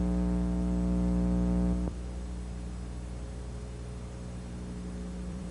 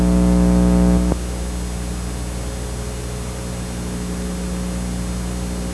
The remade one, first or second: first